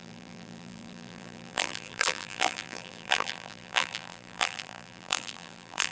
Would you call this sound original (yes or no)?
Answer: no